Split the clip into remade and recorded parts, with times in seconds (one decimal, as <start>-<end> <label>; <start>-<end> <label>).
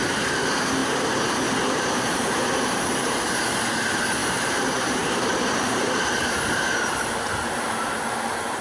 0.0-0.8 recorded; 0.8-3.2 remade; 3.2-4.2 recorded; 4.2-8.0 remade; 8.0-8.6 recorded